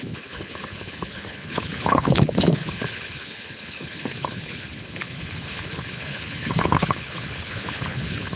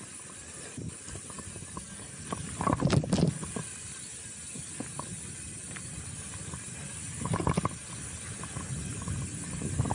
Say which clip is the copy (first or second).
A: first